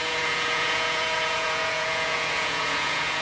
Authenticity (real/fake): fake